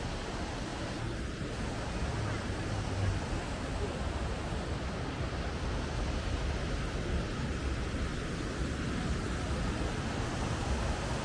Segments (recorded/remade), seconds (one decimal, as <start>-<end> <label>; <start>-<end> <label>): 0.0-11.2 recorded